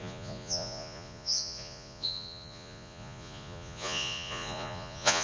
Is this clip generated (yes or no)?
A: yes